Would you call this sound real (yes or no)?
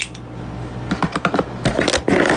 yes